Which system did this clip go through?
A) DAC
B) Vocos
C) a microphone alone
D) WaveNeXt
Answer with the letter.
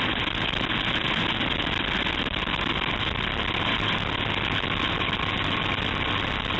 C